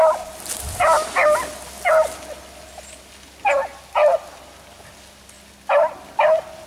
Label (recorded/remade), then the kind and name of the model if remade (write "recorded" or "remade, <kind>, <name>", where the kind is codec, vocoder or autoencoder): recorded